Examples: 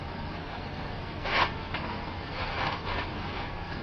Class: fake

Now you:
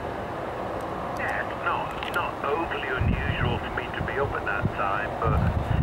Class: real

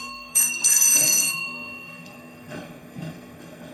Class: fake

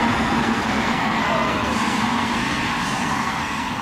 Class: fake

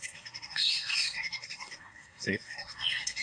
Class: fake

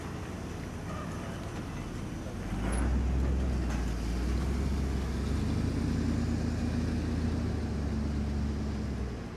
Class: real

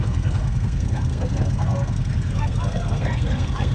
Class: fake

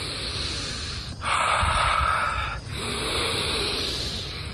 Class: real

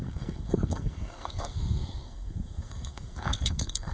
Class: fake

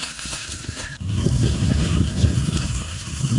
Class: fake